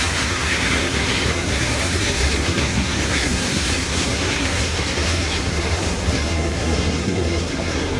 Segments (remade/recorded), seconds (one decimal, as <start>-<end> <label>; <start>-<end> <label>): 0.0-8.0 remade